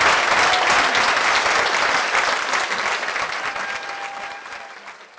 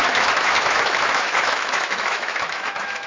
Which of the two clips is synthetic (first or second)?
second